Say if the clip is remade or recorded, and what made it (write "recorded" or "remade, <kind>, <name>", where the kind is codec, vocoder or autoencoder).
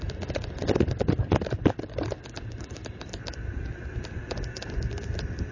recorded